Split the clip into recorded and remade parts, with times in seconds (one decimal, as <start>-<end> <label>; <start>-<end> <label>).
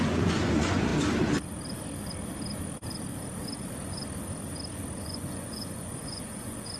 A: 0.0-0.9 remade; 0.9-5.0 recorded; 5.0-6.8 remade